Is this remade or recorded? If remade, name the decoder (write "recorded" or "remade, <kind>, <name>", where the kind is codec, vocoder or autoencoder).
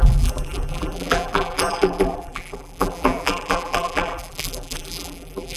remade, vocoder, BigVGAN v2